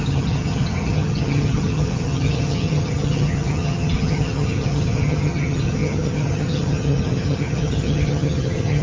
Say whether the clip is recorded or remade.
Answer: remade